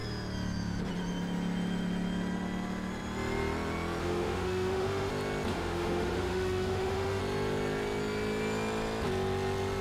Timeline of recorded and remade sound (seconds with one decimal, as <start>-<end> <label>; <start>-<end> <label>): 0.0-4.0 recorded; 4.0-5.1 remade; 5.1-5.5 recorded; 5.5-7.2 remade; 7.2-9.8 recorded